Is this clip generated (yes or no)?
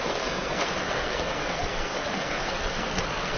yes